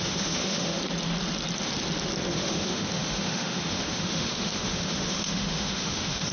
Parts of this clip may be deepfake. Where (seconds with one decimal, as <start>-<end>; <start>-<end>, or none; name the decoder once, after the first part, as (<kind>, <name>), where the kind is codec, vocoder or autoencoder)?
0.0-0.8 (autoencoder, DAC-VAE); 2.3-6.3